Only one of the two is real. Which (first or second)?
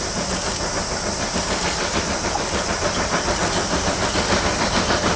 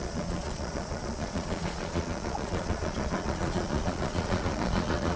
first